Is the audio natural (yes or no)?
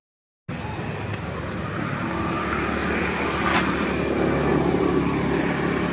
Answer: yes